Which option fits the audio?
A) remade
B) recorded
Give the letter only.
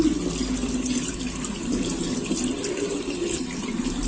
B